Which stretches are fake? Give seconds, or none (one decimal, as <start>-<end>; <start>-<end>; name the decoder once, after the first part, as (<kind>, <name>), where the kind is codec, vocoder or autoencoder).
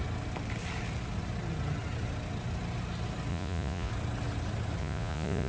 3.3-3.9 (vocoder, Vocos); 4.8-5.5